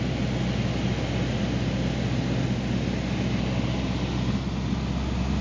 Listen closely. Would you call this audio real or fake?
real